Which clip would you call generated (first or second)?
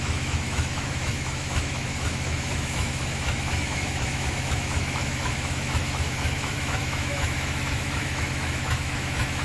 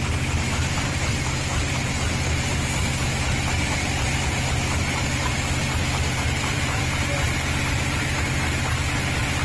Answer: first